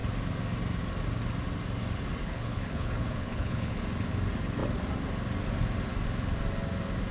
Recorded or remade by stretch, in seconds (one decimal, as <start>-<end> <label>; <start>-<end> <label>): 0.0-2.2 recorded; 2.2-3.8 remade; 3.8-7.1 recorded

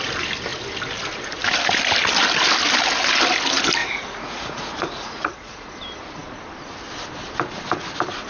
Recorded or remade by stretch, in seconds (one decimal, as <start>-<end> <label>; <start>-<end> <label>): 0.0-3.8 recorded; 3.8-5.7 remade; 5.7-8.3 recorded

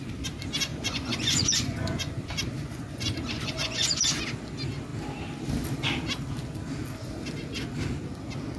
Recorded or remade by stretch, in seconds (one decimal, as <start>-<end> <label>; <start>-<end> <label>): 0.0-0.7 recorded; 0.7-2.1 remade; 2.1-2.6 recorded; 2.6-4.2 remade; 4.2-8.6 recorded

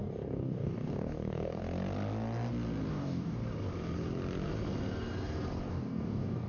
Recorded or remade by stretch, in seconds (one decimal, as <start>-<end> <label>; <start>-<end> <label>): 0.0-1.6 remade; 1.6-2.9 recorded; 2.9-3.4 remade; 3.4-5.7 recorded; 5.7-6.5 remade

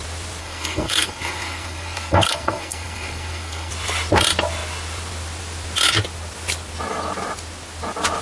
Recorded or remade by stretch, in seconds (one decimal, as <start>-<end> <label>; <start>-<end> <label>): 0.0-0.4 recorded; 0.4-3.7 remade; 3.7-8.2 recorded

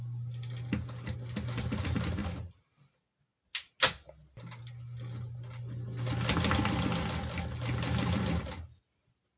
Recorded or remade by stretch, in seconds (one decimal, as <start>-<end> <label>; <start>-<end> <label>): 0.0-9.4 recorded

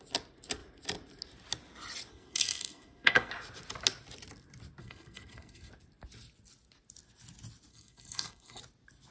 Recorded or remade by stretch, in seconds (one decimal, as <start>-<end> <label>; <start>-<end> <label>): 0.0-2.1 recorded; 2.1-3.3 remade; 3.3-4.8 recorded; 4.8-5.7 remade; 5.7-7.7 recorded; 7.7-8.6 remade; 8.6-9.1 recorded

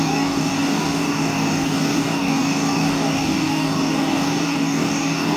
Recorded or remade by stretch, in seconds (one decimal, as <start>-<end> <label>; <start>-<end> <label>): 0.0-5.4 remade